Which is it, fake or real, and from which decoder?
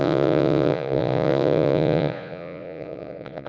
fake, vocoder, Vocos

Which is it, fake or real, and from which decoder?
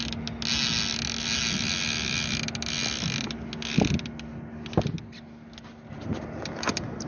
real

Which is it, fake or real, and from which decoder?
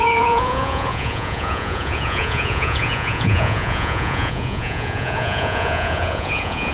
fake, vocoder, Vocos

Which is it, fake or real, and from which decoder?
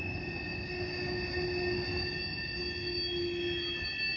real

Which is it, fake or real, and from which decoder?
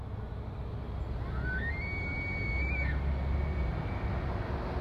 real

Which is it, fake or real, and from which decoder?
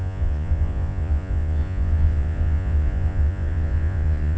fake, vocoder, Vocos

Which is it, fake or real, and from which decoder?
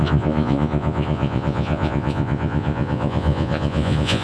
fake, vocoder, Vocos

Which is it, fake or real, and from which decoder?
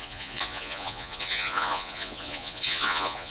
fake, vocoder, Vocos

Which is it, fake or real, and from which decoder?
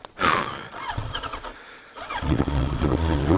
fake, vocoder, Vocos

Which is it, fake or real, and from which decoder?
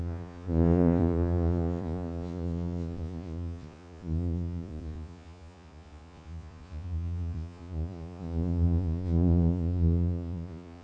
fake, vocoder, Vocos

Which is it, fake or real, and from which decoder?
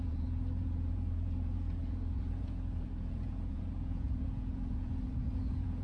fake, vocoder, Vocos